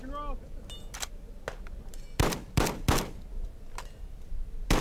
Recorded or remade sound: recorded